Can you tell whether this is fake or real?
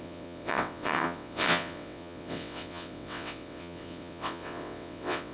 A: fake